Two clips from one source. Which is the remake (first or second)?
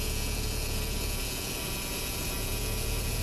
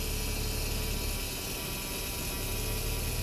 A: first